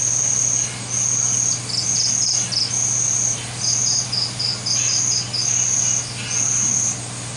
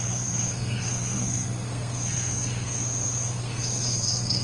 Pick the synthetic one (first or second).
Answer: second